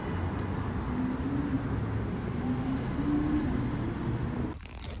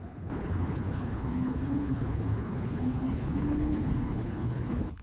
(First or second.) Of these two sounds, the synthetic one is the second